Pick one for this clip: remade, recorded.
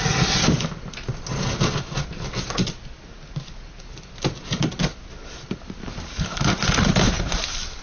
recorded